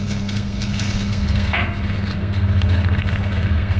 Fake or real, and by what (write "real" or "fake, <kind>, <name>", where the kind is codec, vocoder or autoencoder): fake, codec, SNAC